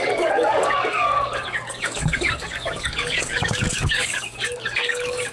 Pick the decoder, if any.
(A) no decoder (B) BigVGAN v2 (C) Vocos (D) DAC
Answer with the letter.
D